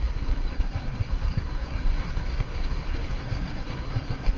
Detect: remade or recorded remade